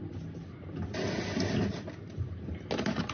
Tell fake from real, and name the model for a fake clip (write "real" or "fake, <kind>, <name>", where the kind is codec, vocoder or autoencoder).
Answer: real